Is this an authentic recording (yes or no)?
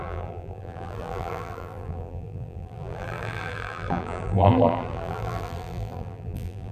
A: no